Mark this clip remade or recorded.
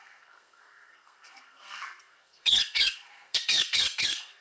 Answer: remade